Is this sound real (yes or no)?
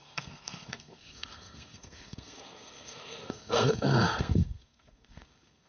no